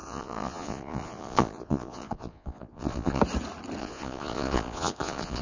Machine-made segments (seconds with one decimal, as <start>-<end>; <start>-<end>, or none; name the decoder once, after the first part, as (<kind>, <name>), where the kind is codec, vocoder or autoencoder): 0.0-3.2 (vocoder, Vocos); 3.8-5.4